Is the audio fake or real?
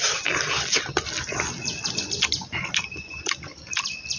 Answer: real